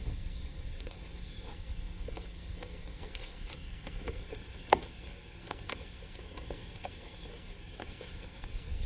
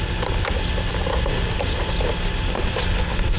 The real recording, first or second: second